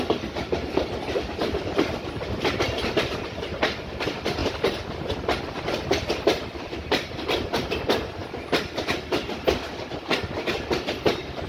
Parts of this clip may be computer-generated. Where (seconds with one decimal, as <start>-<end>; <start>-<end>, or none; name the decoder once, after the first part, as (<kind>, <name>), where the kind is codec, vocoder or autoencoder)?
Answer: none